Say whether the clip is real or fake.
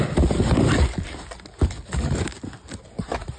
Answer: real